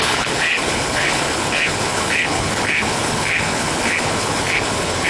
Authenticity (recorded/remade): remade